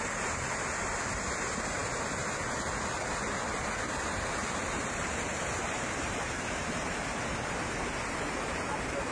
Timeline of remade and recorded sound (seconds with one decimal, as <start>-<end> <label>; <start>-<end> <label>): 0.0-6.6 recorded; 6.6-8.7 remade; 8.7-9.1 recorded